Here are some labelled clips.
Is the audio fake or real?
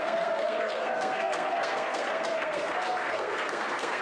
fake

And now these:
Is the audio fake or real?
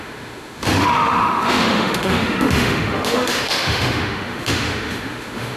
fake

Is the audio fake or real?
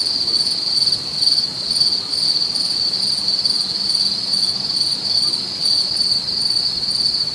real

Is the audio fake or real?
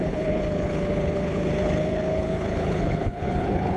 fake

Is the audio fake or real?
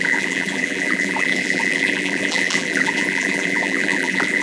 fake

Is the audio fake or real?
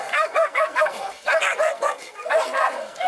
fake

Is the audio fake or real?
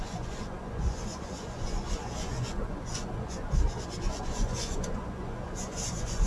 fake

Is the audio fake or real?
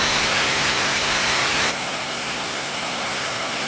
fake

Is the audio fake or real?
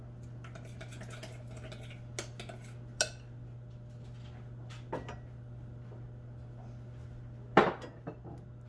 real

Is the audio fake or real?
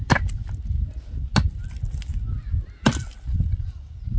real